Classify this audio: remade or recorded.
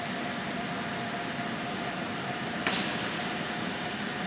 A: recorded